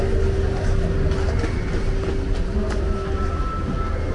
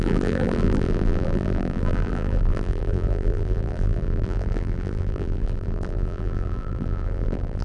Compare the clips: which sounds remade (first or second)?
second